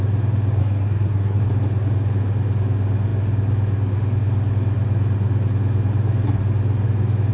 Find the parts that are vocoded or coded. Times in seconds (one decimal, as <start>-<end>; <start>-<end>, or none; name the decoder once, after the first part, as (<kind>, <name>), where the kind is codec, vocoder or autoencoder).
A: 0.6-1.4 (codec, SNAC)